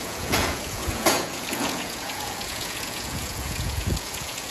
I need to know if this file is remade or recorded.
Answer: remade